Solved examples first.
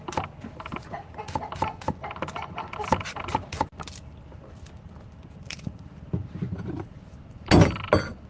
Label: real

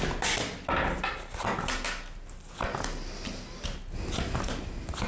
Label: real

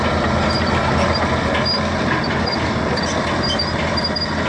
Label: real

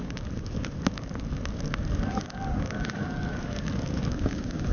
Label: fake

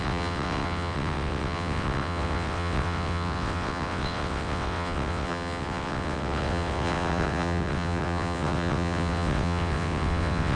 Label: fake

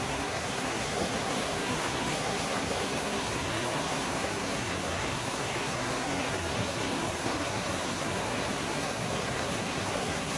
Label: fake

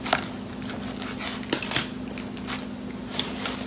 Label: real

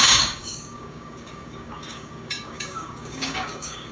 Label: fake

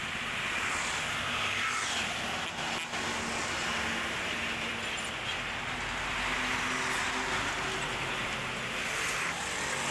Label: real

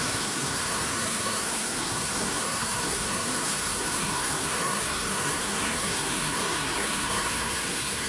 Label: fake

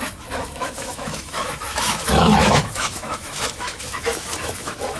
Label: fake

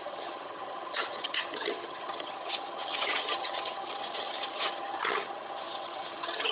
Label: fake